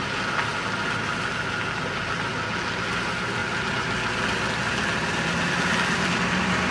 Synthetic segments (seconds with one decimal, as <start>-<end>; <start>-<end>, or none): none